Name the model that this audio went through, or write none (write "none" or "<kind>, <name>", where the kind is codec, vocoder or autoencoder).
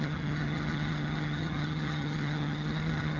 vocoder, HiFi-GAN